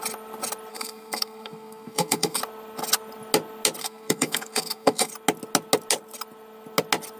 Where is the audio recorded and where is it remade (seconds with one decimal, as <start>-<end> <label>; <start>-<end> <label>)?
0.0-0.7 recorded; 0.7-2.4 remade; 2.4-3.8 recorded; 3.8-5.1 remade; 5.1-7.2 recorded